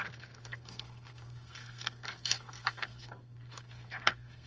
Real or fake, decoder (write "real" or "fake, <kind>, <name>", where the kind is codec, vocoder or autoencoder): fake, codec, SNAC